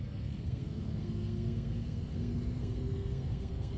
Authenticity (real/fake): fake